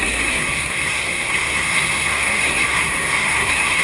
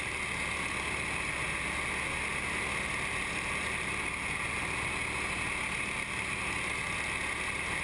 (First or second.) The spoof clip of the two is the first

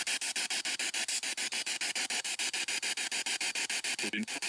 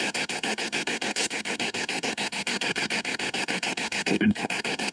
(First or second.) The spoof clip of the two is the second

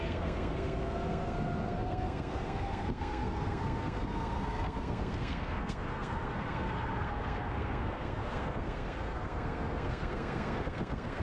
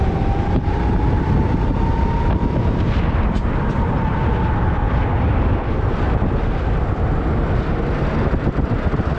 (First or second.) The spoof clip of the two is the first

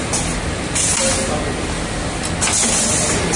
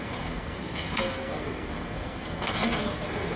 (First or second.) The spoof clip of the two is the second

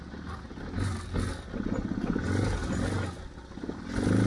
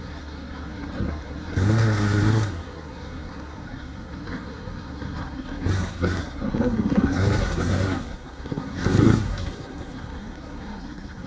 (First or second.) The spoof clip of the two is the second